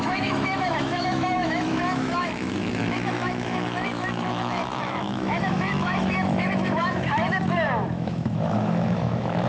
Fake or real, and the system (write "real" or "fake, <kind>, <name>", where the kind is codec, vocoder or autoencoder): fake, autoencoder, DAC-VAE